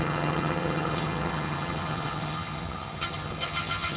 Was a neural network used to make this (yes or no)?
yes